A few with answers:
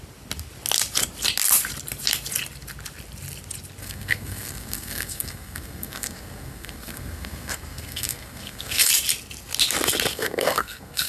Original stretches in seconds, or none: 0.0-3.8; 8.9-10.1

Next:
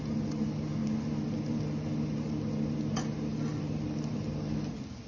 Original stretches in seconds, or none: 0.0-5.1

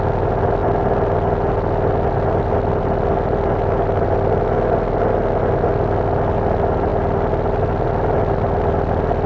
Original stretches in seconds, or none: 0.0-9.3